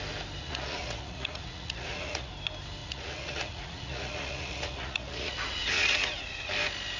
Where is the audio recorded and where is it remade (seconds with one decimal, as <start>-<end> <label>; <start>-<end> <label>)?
0.0-0.4 recorded; 0.4-2.3 remade; 2.3-2.8 recorded; 2.8-6.5 remade; 6.5-7.0 recorded